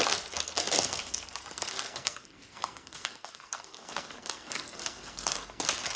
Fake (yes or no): yes